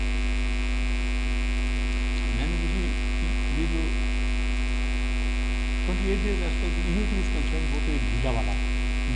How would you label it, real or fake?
real